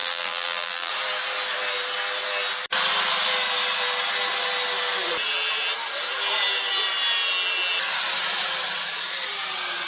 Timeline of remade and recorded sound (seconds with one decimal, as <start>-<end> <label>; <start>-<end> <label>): 0.0-0.9 remade; 0.9-9.9 recorded